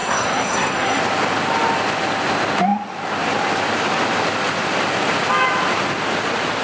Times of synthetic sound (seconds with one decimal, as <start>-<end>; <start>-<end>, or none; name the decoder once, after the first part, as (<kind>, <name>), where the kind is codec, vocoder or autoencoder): 0.0-1.0 (codec, SNAC)